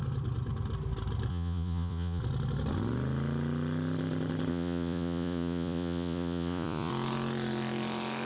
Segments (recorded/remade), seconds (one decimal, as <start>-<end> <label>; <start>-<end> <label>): 0.0-1.3 recorded; 1.3-2.2 remade; 2.2-4.5 recorded; 4.5-6.9 remade; 6.9-8.3 recorded